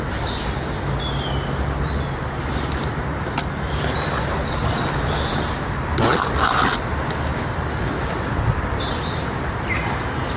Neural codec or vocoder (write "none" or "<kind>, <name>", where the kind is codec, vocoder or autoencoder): none